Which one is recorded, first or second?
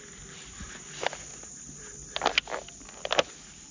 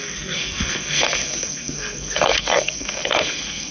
first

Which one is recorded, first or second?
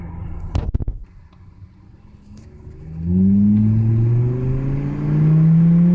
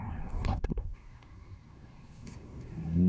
first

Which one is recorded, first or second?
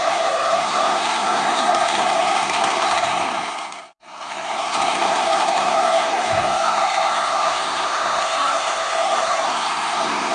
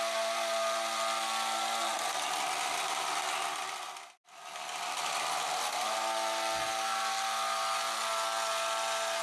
second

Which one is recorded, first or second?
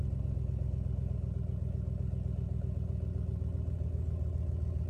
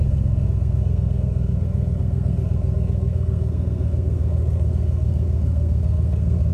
first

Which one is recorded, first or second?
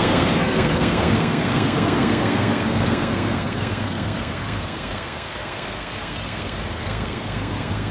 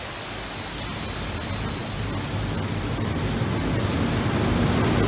second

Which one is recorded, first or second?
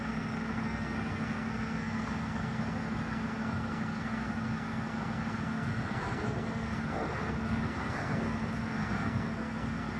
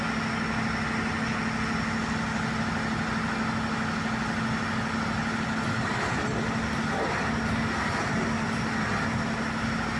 second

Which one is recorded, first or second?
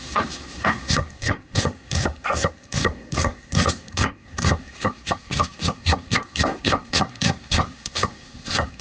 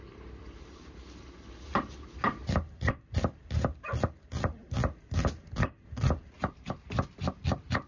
second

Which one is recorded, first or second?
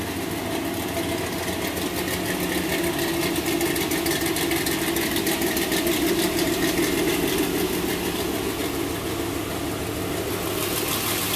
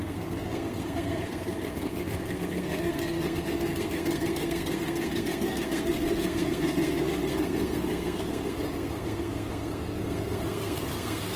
first